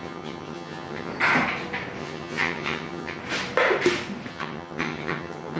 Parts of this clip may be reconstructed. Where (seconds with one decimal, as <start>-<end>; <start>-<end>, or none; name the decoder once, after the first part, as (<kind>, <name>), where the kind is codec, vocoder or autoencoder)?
0.0-1.1 (vocoder, HiFi-GAN); 2.0-3.2; 4.3-5.6